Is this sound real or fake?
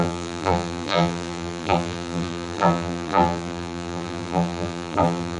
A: fake